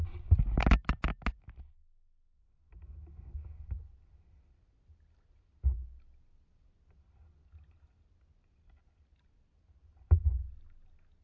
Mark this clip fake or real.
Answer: real